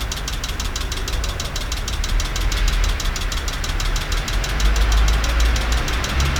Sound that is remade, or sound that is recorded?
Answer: recorded